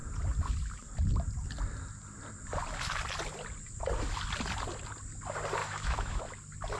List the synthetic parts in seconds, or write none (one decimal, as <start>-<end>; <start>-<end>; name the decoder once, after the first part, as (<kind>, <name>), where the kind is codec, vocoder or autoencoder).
5.6-6.2 (autoencoder, DAC-VAE)